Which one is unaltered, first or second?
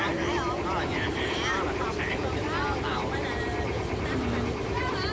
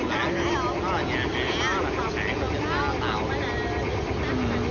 second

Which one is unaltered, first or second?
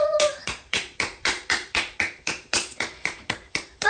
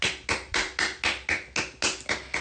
second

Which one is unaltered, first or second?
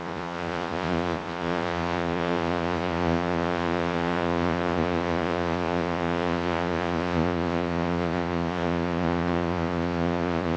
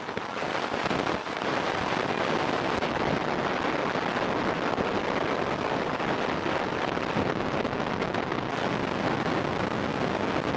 second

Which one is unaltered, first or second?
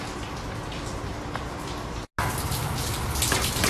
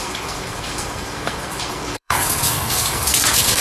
first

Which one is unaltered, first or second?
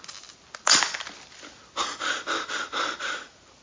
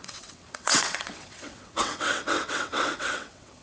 first